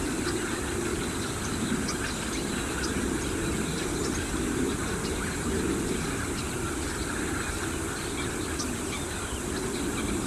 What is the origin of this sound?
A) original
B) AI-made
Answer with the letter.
A